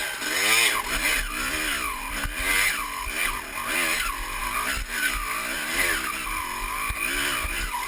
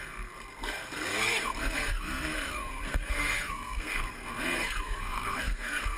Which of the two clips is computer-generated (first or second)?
second